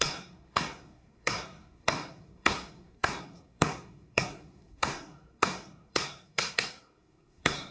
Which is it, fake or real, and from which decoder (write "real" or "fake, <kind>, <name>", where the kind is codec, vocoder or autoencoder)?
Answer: fake, codec, SNAC